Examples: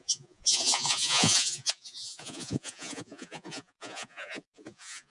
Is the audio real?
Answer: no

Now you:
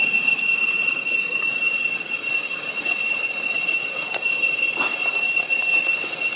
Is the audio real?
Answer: yes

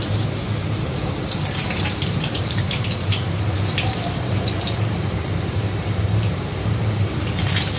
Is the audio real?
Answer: no